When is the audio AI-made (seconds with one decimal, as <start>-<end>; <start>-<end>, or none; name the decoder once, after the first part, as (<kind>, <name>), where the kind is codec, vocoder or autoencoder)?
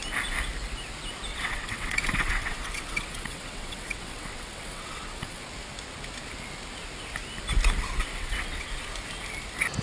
1.3-5.4 (vocoder, WaveNeXt); 8.1-8.7